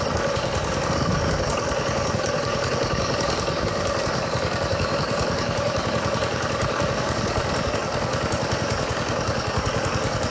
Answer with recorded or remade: remade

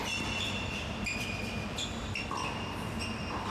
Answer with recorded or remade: recorded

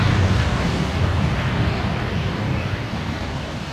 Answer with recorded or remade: remade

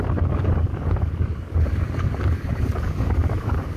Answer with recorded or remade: remade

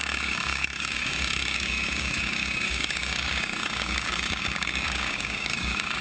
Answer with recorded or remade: remade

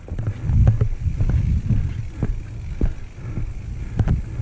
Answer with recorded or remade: recorded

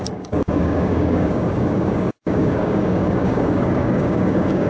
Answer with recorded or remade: remade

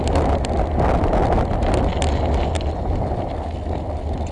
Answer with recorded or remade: recorded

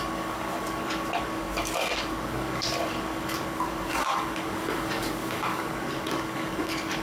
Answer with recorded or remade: remade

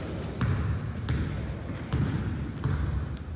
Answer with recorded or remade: recorded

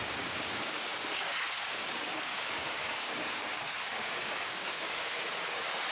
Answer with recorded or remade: remade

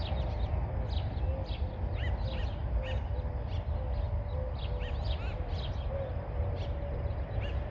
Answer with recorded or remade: recorded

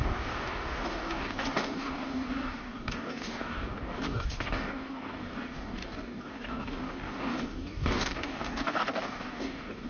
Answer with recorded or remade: remade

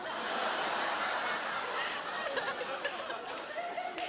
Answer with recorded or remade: recorded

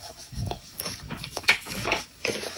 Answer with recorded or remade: remade